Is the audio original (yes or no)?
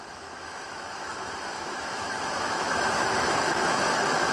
no